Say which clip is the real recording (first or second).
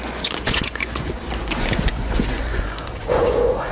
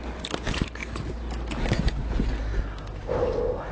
second